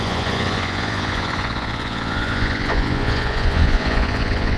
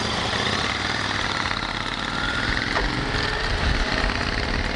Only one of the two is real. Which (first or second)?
second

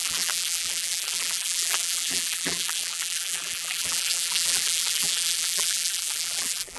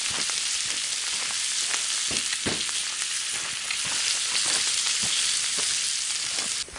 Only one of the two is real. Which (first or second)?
second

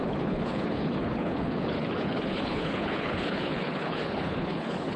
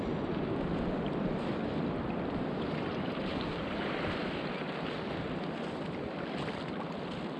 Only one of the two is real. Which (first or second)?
second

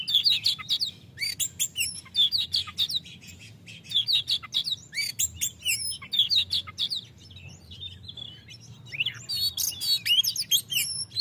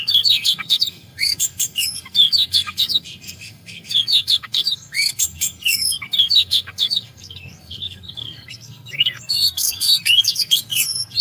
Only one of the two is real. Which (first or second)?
first